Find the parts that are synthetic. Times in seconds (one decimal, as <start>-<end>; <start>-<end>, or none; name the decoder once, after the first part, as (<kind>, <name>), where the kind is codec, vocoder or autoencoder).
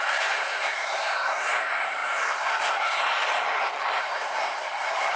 0.0-3.0 (codec, SNAC); 4.0-5.2